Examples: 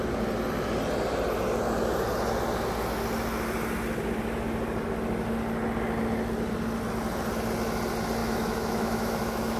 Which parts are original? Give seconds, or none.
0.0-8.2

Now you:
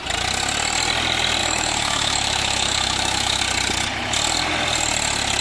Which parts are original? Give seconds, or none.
0.0-1.4; 3.4-5.4

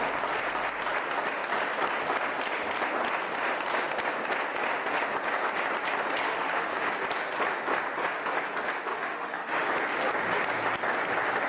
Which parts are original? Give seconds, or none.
0.0-6.3; 6.9-8.9; 9.7-11.5

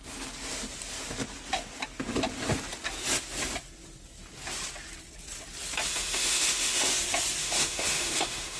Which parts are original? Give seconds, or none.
0.0-5.9; 6.9-7.4